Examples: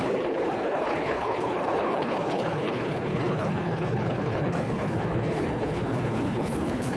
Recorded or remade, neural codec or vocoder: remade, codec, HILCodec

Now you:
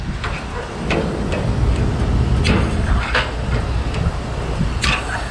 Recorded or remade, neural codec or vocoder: recorded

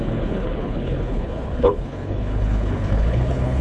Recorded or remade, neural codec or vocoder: remade, codec, HILCodec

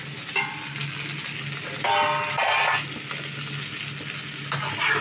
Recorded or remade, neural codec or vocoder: recorded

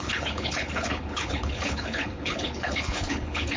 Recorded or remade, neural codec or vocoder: remade, codec, HILCodec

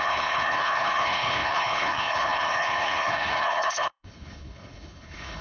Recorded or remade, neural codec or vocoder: remade, codec, HILCodec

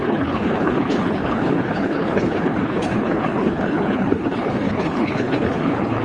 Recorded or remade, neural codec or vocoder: remade, codec, HILCodec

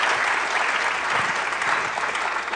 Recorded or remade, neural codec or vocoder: recorded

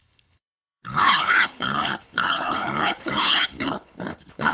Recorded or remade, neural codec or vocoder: remade, codec, HILCodec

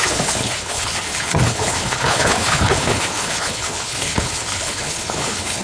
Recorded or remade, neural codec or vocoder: remade, codec, HILCodec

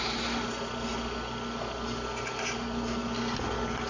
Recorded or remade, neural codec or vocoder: recorded